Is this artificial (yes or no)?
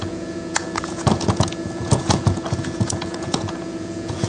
yes